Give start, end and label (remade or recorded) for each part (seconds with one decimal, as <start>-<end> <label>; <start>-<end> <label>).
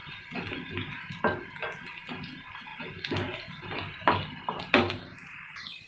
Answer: 0.0-5.9 recorded